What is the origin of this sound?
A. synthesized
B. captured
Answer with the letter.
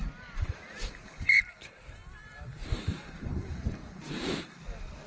A